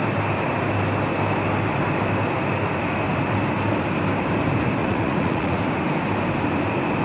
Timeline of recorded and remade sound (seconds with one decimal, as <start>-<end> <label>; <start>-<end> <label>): 0.0-4.8 recorded; 4.8-5.6 remade; 5.6-7.0 recorded